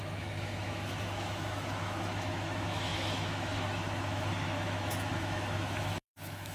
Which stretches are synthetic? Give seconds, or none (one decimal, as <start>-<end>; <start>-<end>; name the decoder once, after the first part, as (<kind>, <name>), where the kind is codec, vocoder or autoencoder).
0.0-6.5 (autoencoder, DAC-VAE)